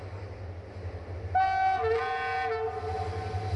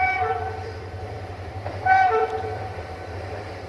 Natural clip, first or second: first